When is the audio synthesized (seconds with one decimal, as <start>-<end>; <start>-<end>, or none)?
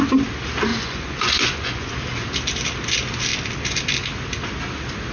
0.7-1.9